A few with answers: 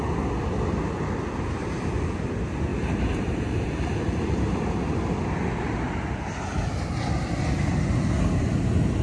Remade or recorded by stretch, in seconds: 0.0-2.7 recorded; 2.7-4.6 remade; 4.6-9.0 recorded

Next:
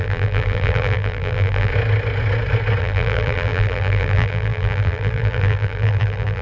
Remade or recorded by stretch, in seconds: 0.0-1.7 remade; 1.7-2.8 recorded; 2.8-6.4 remade

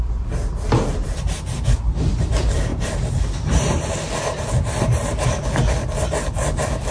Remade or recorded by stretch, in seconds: 0.0-6.9 recorded